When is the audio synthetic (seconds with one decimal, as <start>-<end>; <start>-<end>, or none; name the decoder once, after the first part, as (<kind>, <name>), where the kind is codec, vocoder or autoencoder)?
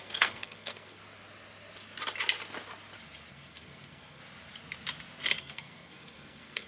0.0-1.0 (codec, SNAC); 3.3-4.2; 5.4-6.7